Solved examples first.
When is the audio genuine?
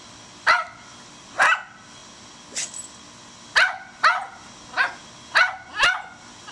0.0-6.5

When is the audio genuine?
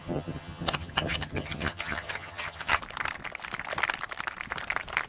2.8-5.1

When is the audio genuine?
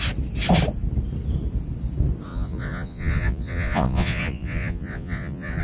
0.0-2.3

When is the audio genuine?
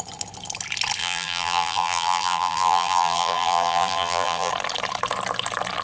0.0-1.0; 4.5-5.8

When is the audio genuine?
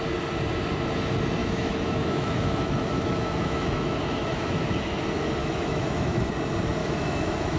0.0-1.4; 5.0-5.4; 6.2-6.8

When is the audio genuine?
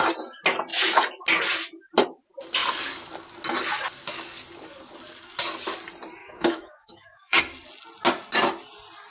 0.0-6.2; 7.4-9.1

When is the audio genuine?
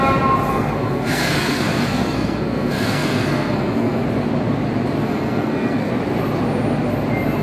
0.0-0.5; 4.0-5.1; 5.9-7.4